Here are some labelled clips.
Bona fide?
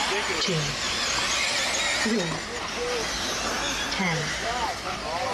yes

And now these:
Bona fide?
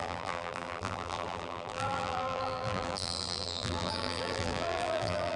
no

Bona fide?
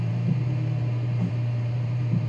no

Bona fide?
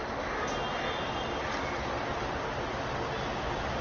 yes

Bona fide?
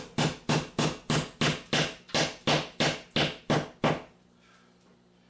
yes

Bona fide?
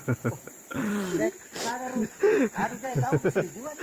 no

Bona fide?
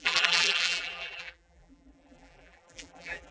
no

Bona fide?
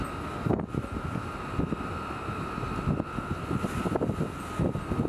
yes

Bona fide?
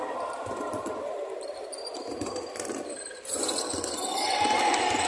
no